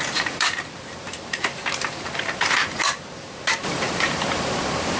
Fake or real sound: fake